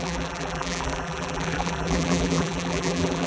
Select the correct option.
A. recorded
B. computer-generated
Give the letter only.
B